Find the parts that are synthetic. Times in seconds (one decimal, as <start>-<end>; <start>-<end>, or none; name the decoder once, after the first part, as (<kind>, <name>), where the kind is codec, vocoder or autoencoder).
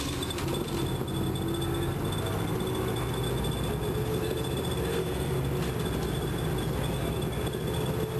4.9-5.4 (codec, SNAC)